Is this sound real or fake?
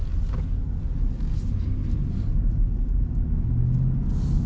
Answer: real